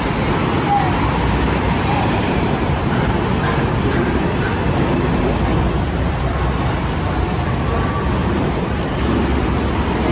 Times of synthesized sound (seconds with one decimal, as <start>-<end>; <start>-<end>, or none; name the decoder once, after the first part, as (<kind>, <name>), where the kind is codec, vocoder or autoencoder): 1.1-3.0 (vocoder, BigVGAN v2); 8.2-8.9